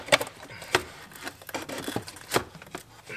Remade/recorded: recorded